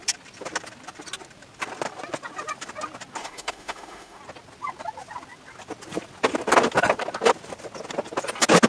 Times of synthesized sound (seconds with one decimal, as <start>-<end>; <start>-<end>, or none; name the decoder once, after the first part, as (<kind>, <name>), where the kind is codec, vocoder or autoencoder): 3.2-4.2 (autoencoder, DAC-VAE)